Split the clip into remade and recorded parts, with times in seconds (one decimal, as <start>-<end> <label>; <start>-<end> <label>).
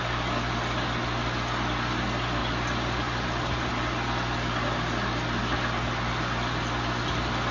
0.0-2.4 recorded; 2.4-3.7 remade; 3.7-7.5 recorded